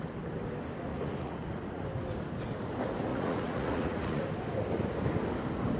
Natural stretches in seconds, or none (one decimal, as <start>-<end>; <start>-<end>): 0.0-0.9; 1.8-3.1; 4.2-5.8